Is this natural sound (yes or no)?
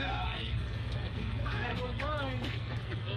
no